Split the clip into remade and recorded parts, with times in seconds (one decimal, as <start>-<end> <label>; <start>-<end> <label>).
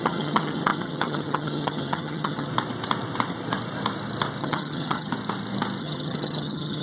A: 0.0-2.5 remade; 2.5-4.4 recorded; 4.4-5.1 remade; 5.1-5.8 recorded; 5.8-6.8 remade